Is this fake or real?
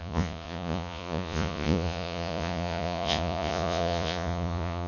fake